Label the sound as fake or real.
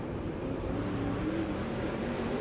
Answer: fake